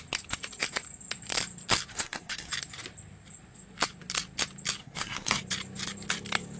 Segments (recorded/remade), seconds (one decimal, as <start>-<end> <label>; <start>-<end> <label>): 0.0-1.9 recorded; 1.9-2.5 remade; 2.5-4.8 recorded; 4.8-5.4 remade; 5.4-6.6 recorded

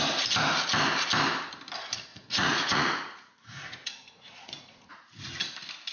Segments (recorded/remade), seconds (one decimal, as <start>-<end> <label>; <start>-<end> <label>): 0.0-2.1 recorded; 2.1-5.2 remade; 5.2-5.9 recorded

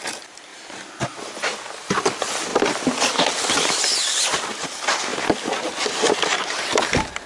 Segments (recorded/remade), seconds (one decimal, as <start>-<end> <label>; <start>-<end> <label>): 0.0-0.5 recorded; 0.5-1.4 remade; 1.4-7.3 recorded